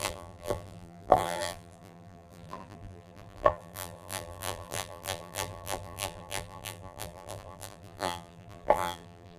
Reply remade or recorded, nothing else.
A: remade